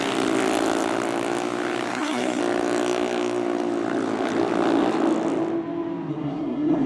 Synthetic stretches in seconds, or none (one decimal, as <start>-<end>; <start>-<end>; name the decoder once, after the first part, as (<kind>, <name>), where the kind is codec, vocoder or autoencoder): 1.9-2.4 (codec, SNAC); 6.1-6.9